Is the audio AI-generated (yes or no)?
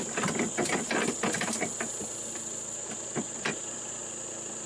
no